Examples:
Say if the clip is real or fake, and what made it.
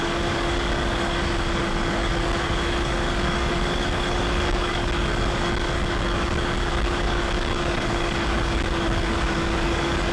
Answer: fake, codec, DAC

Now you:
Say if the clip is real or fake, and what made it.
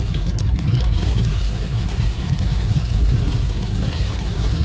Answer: fake, codec, SNAC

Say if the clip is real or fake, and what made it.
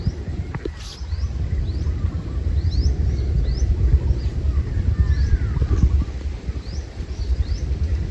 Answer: fake, vocoder, BigVGAN v2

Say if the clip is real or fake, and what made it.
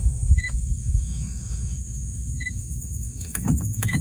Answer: fake, autoencoder, DAC-VAE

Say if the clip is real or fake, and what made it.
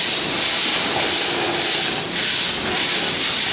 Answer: real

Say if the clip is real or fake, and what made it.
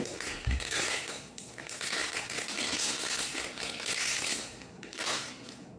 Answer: fake, codec, SNAC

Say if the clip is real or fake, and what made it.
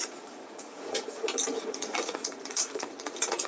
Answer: fake, vocoder, Vocos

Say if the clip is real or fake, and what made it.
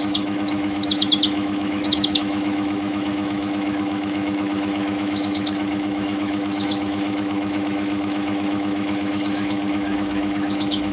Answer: fake, autoencoder, DAC-VAE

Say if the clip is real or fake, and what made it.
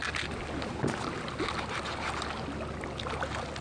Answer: real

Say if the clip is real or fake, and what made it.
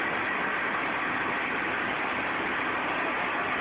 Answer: real